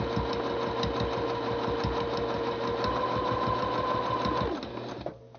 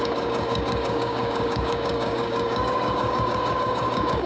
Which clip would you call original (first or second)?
first